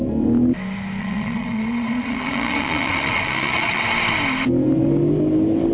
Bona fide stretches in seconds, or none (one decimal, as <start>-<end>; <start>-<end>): 0.0-1.0; 3.8-5.7